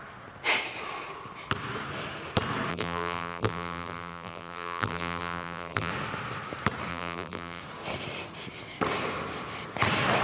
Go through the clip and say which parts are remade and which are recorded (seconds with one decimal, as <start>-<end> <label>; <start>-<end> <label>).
0.0-2.7 recorded; 2.7-5.9 remade; 5.9-6.9 recorded; 6.9-7.6 remade; 7.6-10.2 recorded